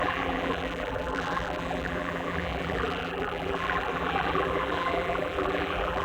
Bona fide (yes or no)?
no